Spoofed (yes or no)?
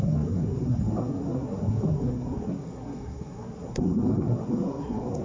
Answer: yes